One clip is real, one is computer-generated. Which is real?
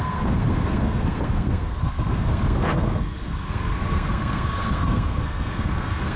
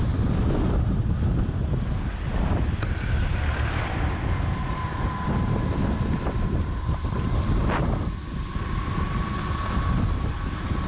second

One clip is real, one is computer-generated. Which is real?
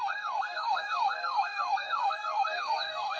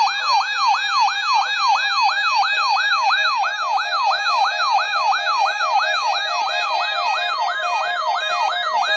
second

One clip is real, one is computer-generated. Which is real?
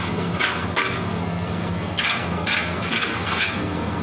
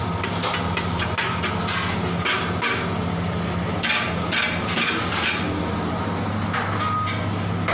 second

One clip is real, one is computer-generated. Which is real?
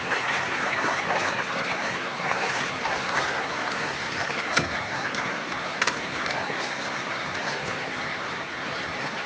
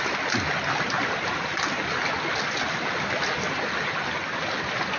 second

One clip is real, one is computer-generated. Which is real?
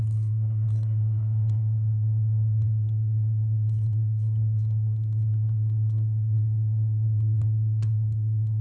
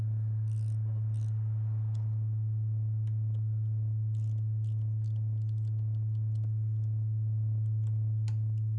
second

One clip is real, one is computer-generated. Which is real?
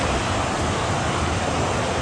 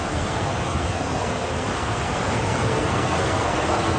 first